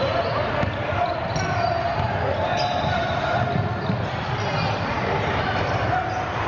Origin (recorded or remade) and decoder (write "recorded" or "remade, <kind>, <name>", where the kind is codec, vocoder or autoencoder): recorded